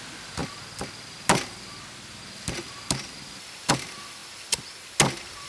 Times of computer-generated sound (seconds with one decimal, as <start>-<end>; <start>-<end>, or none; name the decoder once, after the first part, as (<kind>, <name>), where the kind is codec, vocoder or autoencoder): none